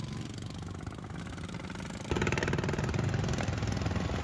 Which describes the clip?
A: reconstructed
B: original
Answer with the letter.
B